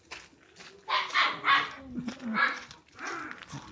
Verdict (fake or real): real